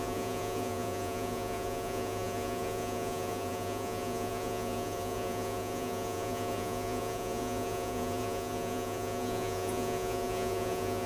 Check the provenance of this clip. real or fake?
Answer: fake